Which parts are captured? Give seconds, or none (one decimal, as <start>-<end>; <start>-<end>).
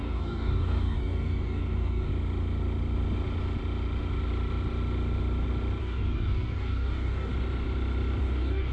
2.1-5.8; 7.3-8.2